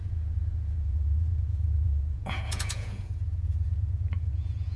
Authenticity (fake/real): fake